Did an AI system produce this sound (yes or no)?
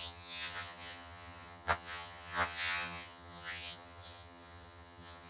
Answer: yes